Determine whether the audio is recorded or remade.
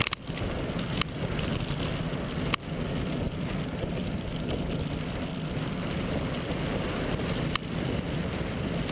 recorded